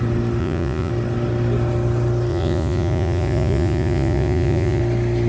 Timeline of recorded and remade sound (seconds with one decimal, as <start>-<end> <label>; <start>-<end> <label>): 0.0-0.4 recorded; 0.4-0.9 remade; 0.9-2.3 recorded; 2.3-4.8 remade; 4.8-5.3 recorded

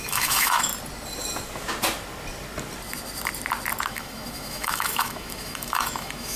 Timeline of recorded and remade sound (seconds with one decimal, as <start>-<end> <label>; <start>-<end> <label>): 0.0-0.7 remade; 0.7-3.9 recorded; 3.9-6.4 remade